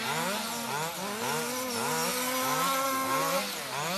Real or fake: real